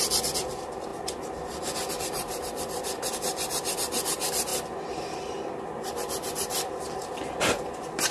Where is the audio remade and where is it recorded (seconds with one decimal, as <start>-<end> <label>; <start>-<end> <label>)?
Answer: 0.0-0.9 remade; 0.9-1.9 recorded; 1.9-4.5 remade; 4.5-8.1 recorded